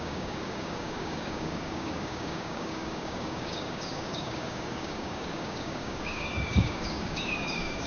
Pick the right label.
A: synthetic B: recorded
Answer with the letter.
A